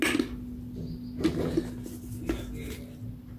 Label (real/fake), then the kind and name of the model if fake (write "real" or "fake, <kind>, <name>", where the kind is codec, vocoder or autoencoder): real